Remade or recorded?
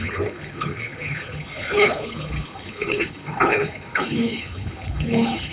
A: remade